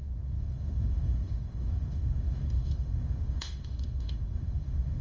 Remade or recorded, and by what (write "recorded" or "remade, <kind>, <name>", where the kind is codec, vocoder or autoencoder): remade, autoencoder, DAC-VAE